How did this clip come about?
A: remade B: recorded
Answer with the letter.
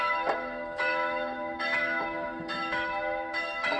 A